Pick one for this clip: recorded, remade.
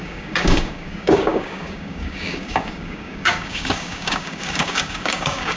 remade